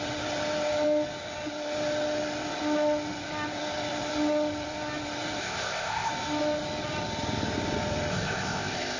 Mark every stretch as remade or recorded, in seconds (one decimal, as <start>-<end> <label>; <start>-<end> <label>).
0.0-5.4 recorded; 5.4-6.1 remade; 6.1-8.1 recorded; 8.1-9.0 remade